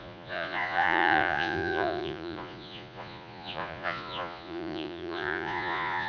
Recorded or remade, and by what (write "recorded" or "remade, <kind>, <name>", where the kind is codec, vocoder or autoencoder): remade, vocoder, Vocos